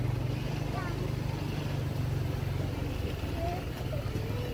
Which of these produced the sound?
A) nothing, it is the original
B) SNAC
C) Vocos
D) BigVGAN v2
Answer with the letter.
A